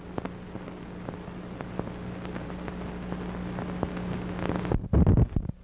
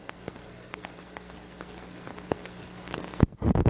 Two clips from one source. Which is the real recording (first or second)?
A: first